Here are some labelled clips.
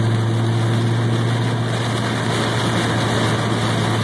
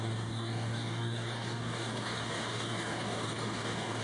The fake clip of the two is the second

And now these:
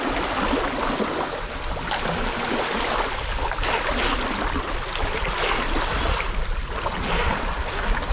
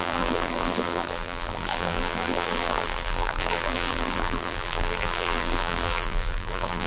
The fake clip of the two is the second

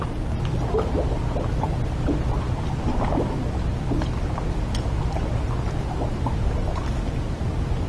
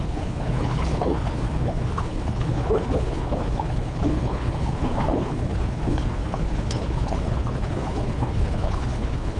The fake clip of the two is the second